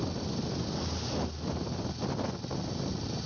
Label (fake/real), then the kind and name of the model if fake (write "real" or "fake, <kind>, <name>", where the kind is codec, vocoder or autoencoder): real